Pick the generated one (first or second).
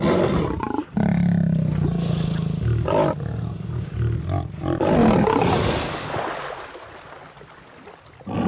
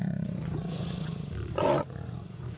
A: second